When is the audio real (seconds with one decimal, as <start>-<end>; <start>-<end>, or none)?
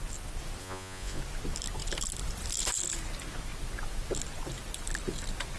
0.0-0.6; 1.2-5.6